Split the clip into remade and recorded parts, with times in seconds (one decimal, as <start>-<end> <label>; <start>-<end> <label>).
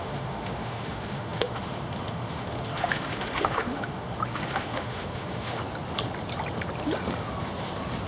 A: 0.0-5.6 remade; 5.6-8.1 recorded